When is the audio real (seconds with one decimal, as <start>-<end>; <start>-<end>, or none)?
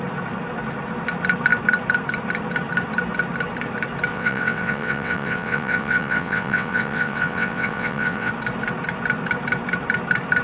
0.0-4.1; 8.3-10.4